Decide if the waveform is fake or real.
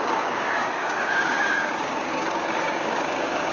fake